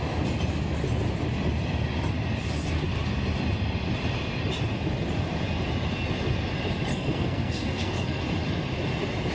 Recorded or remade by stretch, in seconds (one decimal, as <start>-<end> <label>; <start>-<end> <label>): 0.0-6.9 recorded; 6.9-8.2 remade; 8.2-9.3 recorded